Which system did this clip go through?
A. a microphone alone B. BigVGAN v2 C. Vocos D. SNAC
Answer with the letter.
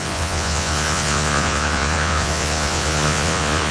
C